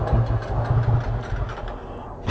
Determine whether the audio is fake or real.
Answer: real